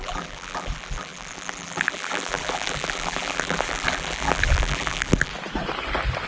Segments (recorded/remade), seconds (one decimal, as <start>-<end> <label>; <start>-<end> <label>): 0.0-5.3 remade; 5.3-6.3 recorded